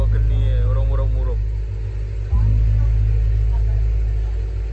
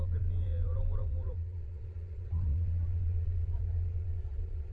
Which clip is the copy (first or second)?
second